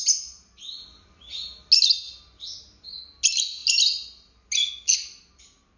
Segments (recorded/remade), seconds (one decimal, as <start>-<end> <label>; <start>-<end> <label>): 0.0-5.8 recorded